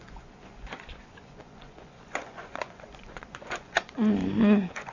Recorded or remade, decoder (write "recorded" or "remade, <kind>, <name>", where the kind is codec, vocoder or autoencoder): remade, vocoder, Vocos